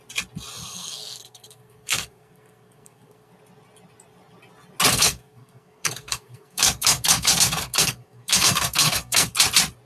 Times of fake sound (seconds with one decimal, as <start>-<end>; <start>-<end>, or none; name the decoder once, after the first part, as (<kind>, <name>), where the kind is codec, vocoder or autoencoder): 0.6-3.3 (codec, SNAC); 4.9-9.3